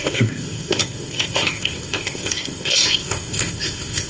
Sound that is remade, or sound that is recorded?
remade